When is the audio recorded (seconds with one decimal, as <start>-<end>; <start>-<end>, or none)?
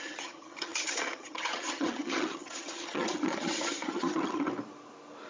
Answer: 4.5-5.3